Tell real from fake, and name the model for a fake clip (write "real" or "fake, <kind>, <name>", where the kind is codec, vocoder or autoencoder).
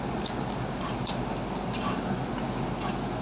real